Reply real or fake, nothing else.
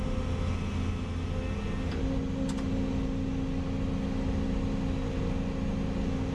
real